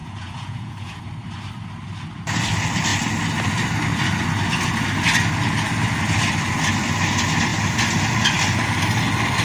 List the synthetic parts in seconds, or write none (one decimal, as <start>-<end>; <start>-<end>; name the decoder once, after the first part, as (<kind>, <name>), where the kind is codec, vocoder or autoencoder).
0.0-1.0 (vocoder, Vocos)